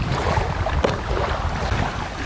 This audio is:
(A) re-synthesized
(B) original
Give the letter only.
B